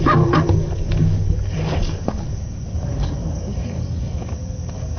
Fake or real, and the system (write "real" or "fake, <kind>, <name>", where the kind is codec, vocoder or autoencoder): fake, codec, DAC